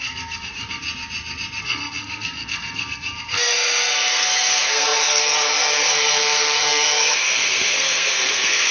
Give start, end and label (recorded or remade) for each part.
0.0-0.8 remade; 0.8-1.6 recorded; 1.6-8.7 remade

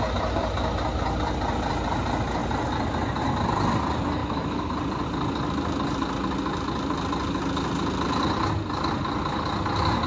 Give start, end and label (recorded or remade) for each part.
0.0-4.2 recorded; 4.2-4.7 remade; 4.7-10.1 recorded

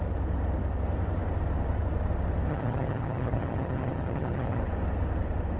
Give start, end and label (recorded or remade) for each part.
0.0-2.5 recorded; 2.5-4.6 remade; 4.6-5.6 recorded

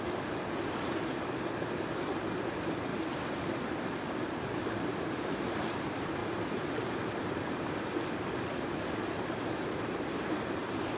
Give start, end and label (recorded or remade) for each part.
0.0-2.9 remade; 2.9-3.4 recorded; 3.4-6.2 remade; 6.2-6.8 recorded; 6.8-9.4 remade; 9.4-10.6 recorded; 10.6-11.0 remade

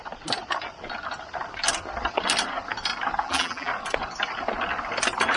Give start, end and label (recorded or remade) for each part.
0.0-3.2 recorded; 3.2-3.7 remade; 3.7-5.4 recorded

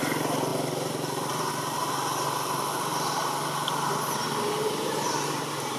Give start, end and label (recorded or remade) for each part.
0.0-4.6 recorded; 4.6-5.8 remade